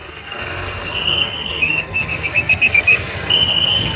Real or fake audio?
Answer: fake